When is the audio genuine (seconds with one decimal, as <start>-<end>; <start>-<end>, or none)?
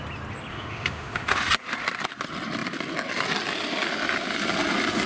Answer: 0.0-0.5; 1.5-5.1